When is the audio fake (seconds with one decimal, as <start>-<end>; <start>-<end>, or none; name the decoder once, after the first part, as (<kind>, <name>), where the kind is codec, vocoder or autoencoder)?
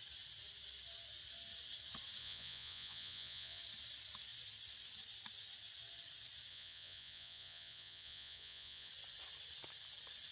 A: 2.2-3.6 (vocoder, Vocos); 6.5-8.9